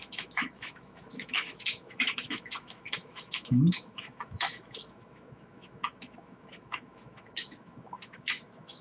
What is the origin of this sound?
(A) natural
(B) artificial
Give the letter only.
B